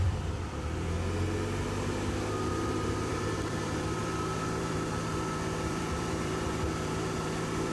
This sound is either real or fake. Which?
fake